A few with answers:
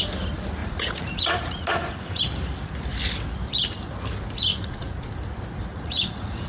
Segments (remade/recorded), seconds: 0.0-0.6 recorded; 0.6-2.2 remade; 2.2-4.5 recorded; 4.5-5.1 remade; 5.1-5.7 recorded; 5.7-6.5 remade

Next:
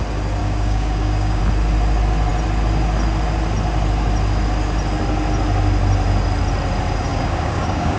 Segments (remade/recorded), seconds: 0.0-0.4 recorded; 0.4-1.4 remade; 1.4-7.1 recorded; 7.1-8.0 remade